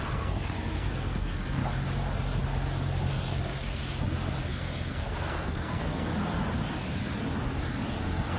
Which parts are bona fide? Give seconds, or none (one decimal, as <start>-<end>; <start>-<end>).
1.6-3.1; 3.8-4.4; 6.1-8.0